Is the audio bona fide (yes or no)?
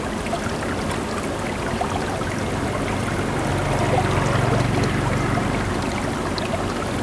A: yes